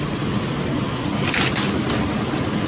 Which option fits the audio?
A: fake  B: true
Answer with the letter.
B